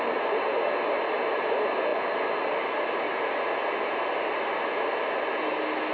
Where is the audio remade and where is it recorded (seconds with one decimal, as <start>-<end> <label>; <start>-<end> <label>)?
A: 0.0-5.9 recorded